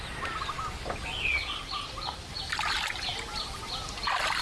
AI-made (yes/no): no